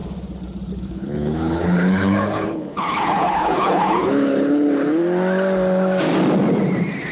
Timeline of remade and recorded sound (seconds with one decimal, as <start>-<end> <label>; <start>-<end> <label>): 0.0-0.7 recorded; 0.7-5.0 remade; 5.0-7.1 recorded